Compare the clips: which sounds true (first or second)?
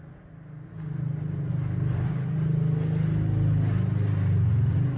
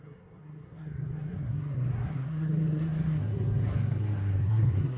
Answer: first